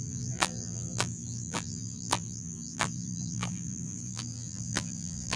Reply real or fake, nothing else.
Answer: fake